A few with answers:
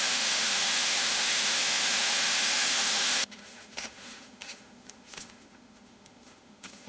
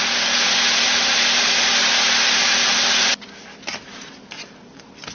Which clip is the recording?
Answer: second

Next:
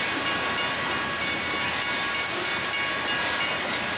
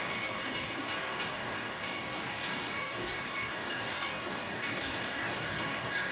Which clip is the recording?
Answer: first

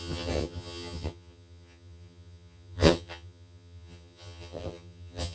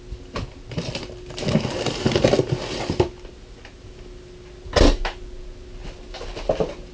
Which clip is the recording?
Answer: second